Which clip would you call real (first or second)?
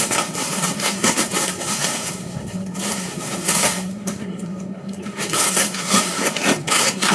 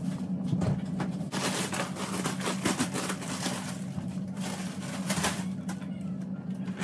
second